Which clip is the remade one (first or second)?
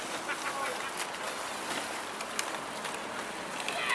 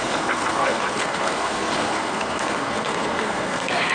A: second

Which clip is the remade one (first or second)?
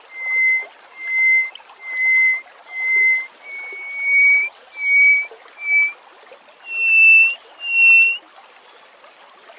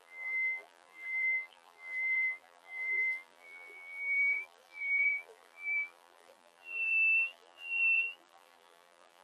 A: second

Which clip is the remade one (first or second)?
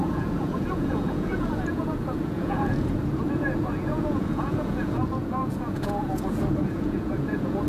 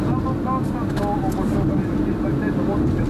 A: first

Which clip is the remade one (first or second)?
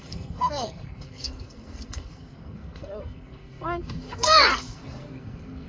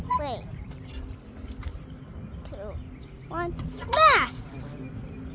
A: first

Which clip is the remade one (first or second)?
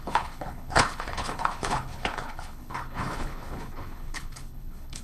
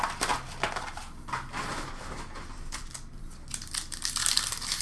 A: first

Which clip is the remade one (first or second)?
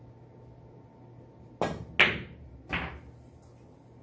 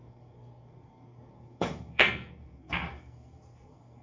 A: second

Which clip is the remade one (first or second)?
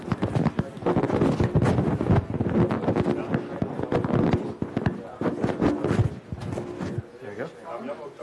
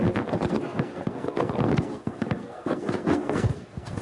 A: second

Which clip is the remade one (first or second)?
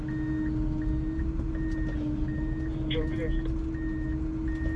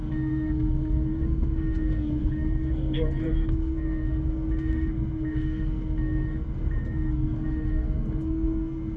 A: second